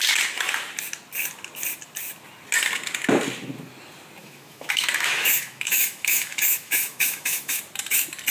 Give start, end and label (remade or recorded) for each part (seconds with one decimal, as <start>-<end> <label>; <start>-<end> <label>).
0.0-4.2 recorded; 4.2-7.6 remade; 7.6-8.3 recorded